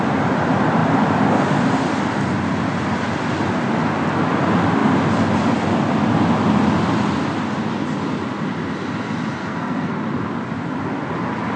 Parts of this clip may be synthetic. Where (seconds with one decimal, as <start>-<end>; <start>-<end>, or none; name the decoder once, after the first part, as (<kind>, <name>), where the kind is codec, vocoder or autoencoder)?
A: 9.4-9.9 (codec, SNAC)